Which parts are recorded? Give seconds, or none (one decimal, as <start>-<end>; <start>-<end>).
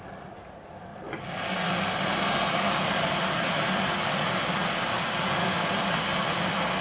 0.0-6.8